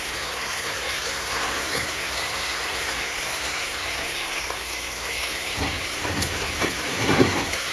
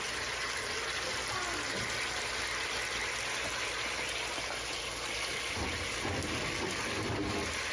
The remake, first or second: first